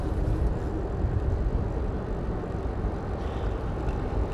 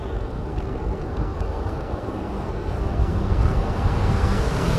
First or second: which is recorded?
first